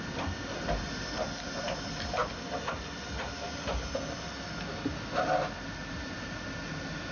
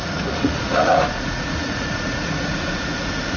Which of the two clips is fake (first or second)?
second